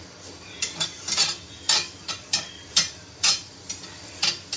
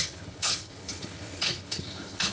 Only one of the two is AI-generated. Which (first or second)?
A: second